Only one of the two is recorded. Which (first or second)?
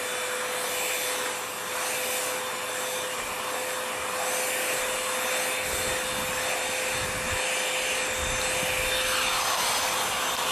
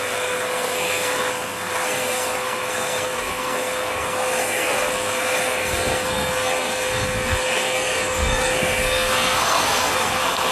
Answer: first